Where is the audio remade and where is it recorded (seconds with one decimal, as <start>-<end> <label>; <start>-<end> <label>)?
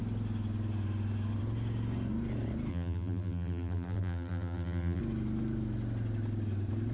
0.0-2.7 recorded; 2.7-5.0 remade; 5.0-6.9 recorded